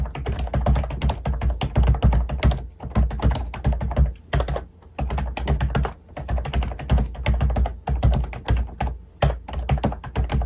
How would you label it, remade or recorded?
recorded